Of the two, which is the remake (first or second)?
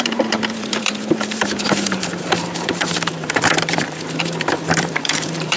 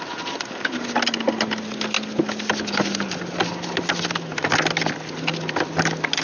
first